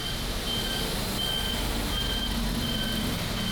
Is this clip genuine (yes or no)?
yes